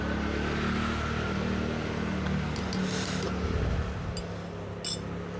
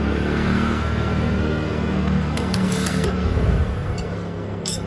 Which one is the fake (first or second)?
second